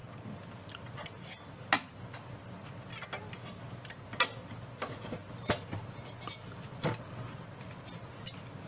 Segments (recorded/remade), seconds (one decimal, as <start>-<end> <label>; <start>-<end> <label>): 0.0-8.7 recorded